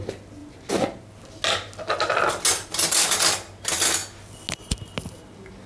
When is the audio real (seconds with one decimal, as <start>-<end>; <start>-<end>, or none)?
0.0-5.7